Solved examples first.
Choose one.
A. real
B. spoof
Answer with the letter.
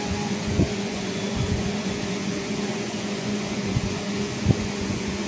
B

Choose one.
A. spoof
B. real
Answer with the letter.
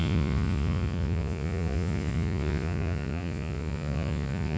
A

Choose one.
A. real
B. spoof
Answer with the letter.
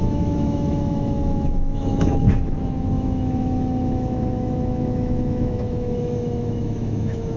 B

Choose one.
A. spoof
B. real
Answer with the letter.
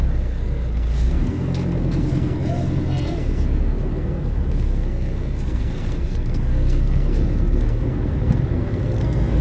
A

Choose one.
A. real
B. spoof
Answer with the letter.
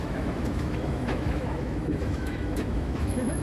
B